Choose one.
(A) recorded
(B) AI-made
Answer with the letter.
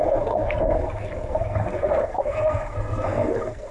B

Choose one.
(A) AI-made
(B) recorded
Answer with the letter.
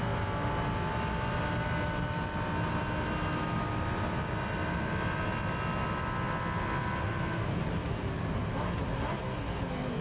B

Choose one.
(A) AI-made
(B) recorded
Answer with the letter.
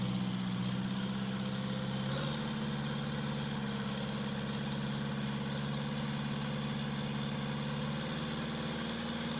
B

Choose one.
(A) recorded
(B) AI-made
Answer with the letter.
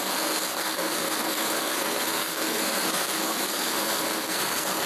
B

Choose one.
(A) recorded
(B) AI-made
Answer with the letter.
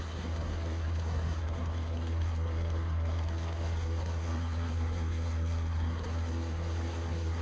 B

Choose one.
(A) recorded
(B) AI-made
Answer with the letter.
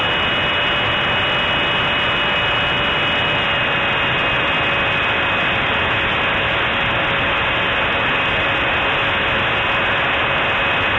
A